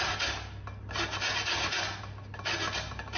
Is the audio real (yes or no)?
yes